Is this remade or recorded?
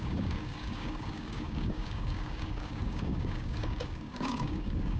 remade